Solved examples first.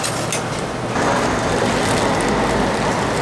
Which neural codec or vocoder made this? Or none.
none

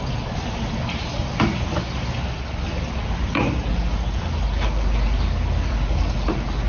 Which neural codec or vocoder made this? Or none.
none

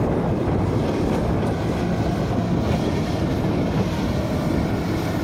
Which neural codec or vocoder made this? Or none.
none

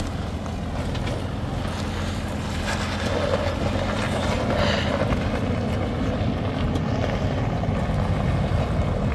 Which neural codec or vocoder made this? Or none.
none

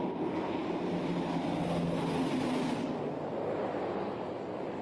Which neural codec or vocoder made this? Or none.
none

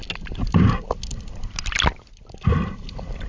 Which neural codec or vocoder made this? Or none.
none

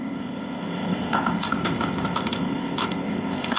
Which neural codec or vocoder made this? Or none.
codec, ZipCodec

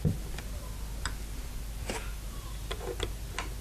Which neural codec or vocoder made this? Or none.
none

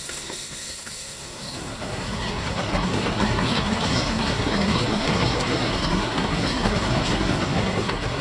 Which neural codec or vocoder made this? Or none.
codec, SNAC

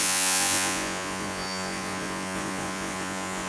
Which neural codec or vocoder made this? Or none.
vocoder, Vocos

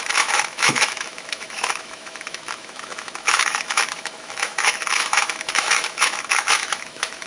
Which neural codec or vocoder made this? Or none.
autoencoder, DAC-VAE